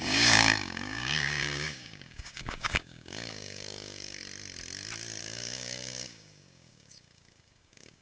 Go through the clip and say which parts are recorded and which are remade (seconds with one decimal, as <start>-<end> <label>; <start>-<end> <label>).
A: 0.0-4.2 remade; 4.2-5.2 recorded; 5.2-8.0 remade